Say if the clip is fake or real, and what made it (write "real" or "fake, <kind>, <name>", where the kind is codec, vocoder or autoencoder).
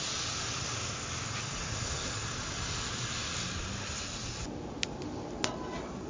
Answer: real